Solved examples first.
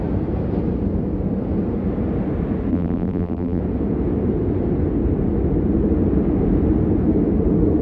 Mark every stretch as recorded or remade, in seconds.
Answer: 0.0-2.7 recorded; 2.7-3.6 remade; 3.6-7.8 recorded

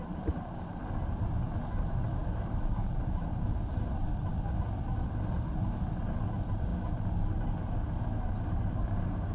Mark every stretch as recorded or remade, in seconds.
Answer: 0.0-0.8 remade; 0.8-1.3 recorded; 1.3-4.3 remade; 4.3-6.3 recorded; 6.3-6.7 remade; 6.7-7.3 recorded; 7.3-9.3 remade

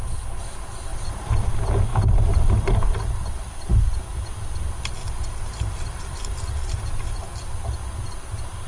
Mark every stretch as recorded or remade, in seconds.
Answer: 0.0-0.9 recorded; 0.9-1.5 remade; 1.5-1.9 recorded; 1.9-3.1 remade; 3.1-5.0 recorded; 5.0-7.2 remade; 7.2-8.7 recorded

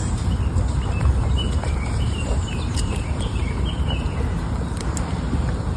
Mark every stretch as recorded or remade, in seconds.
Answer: 0.0-1.0 recorded; 1.0-4.5 remade; 4.5-5.8 recorded

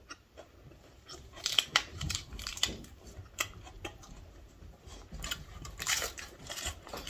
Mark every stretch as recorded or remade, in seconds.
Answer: 0.0-7.1 remade

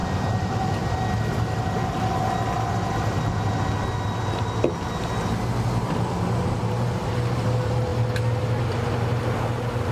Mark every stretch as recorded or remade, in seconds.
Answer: 0.0-9.9 recorded

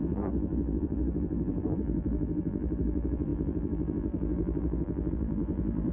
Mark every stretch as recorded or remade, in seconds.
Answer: 0.0-5.9 remade

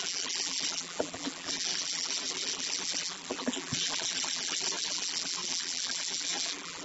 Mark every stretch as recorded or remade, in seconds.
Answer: 0.0-6.8 remade